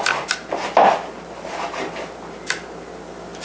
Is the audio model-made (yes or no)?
no